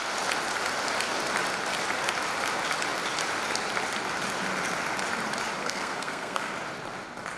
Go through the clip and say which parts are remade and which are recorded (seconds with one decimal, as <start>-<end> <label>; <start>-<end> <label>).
0.0-5.6 recorded; 5.6-6.5 remade; 6.5-7.4 recorded